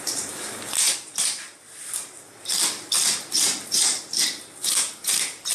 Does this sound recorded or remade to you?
remade